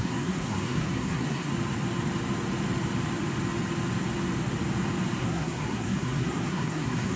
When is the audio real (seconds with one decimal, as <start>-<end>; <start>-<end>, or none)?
1.5-5.2